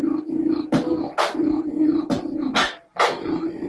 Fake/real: real